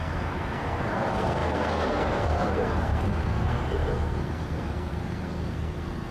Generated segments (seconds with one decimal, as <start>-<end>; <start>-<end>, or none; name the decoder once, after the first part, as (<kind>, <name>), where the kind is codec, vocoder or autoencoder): 0.0-6.1 (codec, SNAC)